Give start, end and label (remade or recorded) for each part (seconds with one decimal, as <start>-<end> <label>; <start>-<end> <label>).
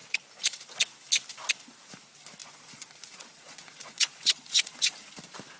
0.0-2.4 recorded; 2.4-5.1 remade; 5.1-5.6 recorded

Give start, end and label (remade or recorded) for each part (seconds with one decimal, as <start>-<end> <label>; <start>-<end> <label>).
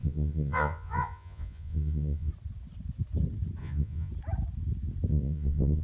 0.0-2.3 remade; 2.3-3.6 recorded; 3.6-4.1 remade; 4.1-5.1 recorded; 5.1-5.8 remade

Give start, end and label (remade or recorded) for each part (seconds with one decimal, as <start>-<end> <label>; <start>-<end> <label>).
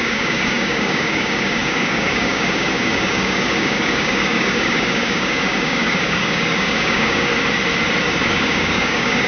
0.0-7.3 remade; 7.3-8.0 recorded; 8.0-9.3 remade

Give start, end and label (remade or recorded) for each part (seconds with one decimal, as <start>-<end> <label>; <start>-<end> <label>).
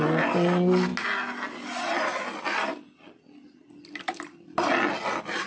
0.0-5.5 recorded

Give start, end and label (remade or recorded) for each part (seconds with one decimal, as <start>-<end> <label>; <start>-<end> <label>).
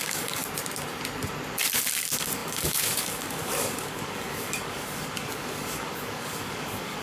0.0-0.4 remade; 0.4-1.9 recorded; 1.9-7.0 remade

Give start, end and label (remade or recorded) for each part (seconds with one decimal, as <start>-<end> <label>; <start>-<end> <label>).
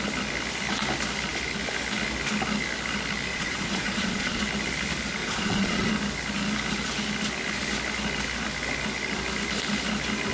0.0-3.3 recorded; 3.3-4.4 remade; 4.4-5.2 recorded; 5.2-5.9 remade; 5.9-10.3 recorded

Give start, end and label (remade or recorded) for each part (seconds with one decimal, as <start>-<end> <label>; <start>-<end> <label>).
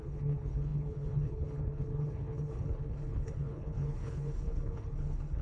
0.0-5.4 remade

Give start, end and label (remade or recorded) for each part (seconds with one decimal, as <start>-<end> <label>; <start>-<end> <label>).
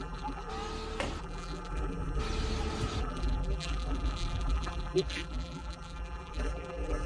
0.0-0.5 remade; 0.5-1.2 recorded; 1.2-2.2 remade; 2.2-3.0 recorded; 3.0-7.1 remade